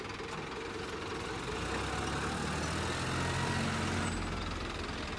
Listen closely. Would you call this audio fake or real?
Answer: real